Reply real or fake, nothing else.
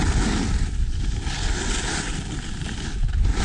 real